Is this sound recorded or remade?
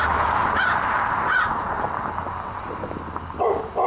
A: recorded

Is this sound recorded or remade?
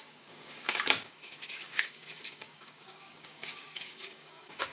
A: remade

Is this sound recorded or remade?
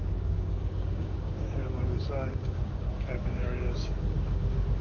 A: remade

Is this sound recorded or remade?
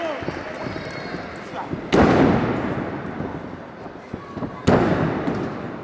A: recorded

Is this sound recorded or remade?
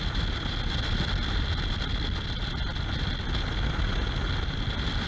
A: recorded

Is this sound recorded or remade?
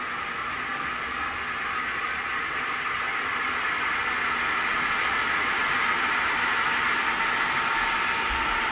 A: recorded